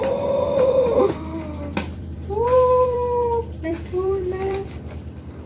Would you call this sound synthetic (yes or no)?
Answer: yes